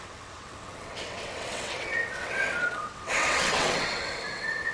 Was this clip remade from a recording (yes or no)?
yes